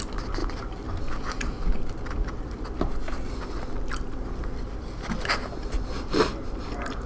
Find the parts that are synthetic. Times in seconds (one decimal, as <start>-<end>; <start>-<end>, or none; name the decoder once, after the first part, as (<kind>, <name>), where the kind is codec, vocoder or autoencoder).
none